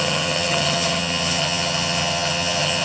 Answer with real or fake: fake